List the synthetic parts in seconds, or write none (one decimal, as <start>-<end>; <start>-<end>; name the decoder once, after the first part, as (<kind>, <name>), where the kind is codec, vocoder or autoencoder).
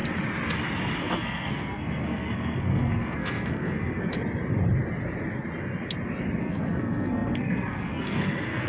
1.0-4.1 (codec, SNAC); 6.4-8.7